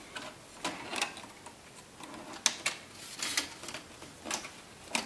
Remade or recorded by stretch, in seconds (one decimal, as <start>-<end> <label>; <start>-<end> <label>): 0.0-0.9 recorded; 0.9-1.4 remade; 1.4-5.1 recorded